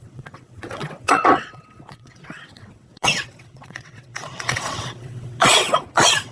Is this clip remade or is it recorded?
remade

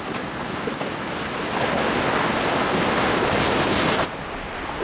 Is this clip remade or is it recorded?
recorded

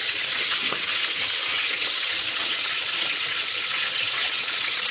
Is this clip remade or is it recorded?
remade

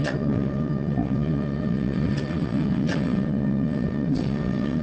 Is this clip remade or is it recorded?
remade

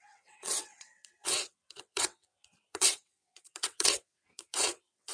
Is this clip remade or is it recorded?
remade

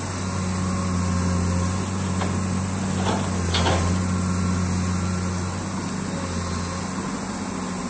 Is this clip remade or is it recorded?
recorded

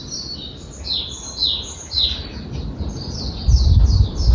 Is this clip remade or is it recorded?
recorded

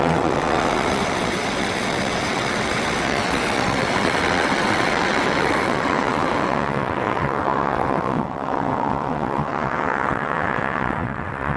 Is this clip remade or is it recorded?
remade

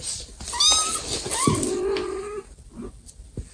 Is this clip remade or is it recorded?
recorded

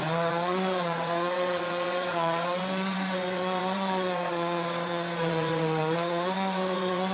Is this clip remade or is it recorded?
remade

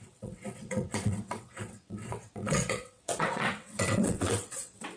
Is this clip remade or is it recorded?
remade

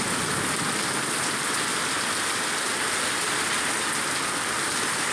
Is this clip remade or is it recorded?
recorded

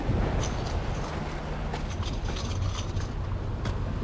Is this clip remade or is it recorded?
recorded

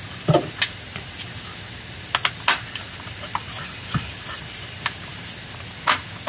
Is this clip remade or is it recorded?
recorded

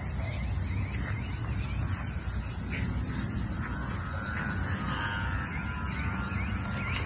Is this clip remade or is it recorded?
recorded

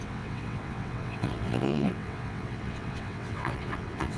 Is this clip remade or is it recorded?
remade